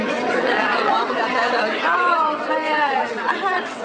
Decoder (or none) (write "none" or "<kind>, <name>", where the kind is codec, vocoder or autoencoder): vocoder, WaveNeXt